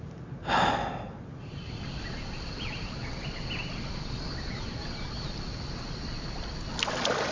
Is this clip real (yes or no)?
yes